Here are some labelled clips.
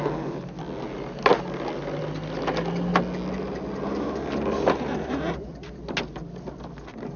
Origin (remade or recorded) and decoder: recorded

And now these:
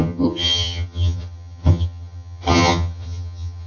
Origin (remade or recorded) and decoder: remade, vocoder, HiFi-GAN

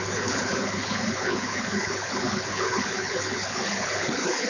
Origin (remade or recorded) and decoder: remade, codec, HILCodec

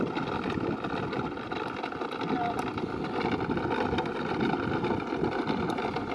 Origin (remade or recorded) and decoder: recorded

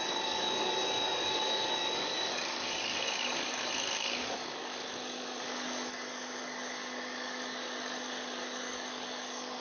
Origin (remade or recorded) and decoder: remade, codec, DAC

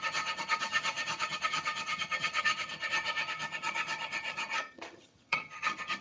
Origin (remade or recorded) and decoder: remade, vocoder, HiFi-GAN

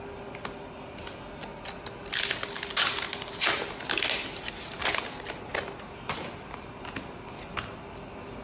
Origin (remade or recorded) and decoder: recorded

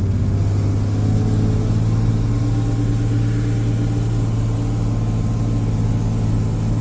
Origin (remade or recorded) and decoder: recorded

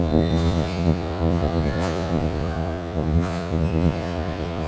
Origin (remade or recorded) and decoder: remade, vocoder, Vocos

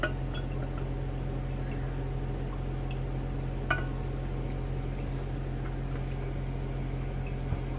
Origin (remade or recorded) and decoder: recorded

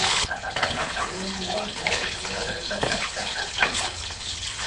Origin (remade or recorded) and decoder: remade, codec, HILCodec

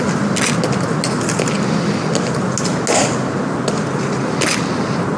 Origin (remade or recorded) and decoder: recorded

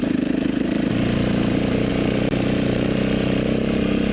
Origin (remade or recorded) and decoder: remade, vocoder, BigVGAN v2